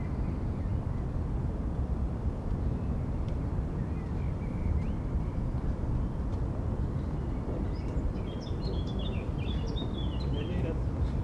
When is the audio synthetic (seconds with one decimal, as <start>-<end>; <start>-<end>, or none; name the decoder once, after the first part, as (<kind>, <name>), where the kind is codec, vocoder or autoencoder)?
0.0-11.2 (vocoder, BigVGAN v2)